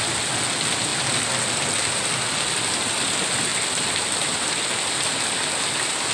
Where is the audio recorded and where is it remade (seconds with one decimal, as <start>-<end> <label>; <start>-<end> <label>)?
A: 0.0-6.1 recorded